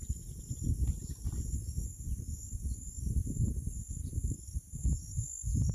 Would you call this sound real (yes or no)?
yes